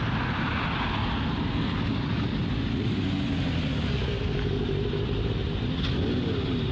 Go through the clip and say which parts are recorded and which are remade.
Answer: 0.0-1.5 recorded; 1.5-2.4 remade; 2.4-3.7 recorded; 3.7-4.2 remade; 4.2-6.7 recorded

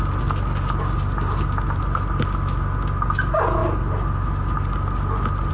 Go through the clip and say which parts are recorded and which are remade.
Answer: 0.0-5.5 recorded

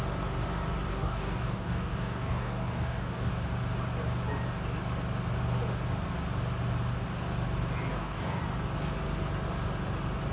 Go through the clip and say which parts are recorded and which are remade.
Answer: 0.0-0.9 recorded; 0.9-3.3 remade; 3.3-7.9 recorded; 7.9-8.4 remade; 8.4-10.3 recorded

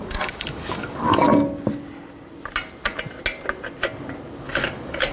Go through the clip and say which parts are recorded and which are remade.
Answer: 0.0-1.3 remade; 1.3-4.4 recorded; 4.4-5.1 remade

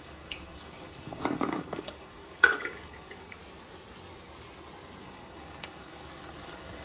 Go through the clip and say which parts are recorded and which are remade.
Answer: 0.0-3.4 remade; 3.4-5.0 recorded; 5.0-6.8 remade

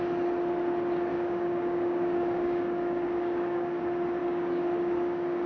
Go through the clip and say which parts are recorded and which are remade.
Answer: 0.0-1.1 recorded; 1.1-3.8 remade; 3.8-4.2 recorded; 4.2-5.5 remade

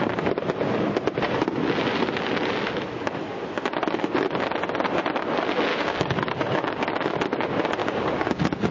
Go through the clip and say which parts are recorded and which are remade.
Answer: 0.0-5.7 recorded; 5.7-6.9 remade; 6.9-7.8 recorded; 7.8-8.7 remade